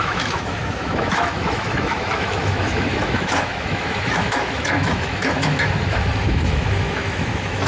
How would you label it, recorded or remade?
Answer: remade